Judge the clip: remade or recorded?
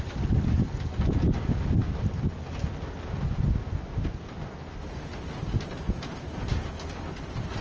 recorded